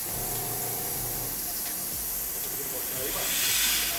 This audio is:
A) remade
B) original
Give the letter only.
B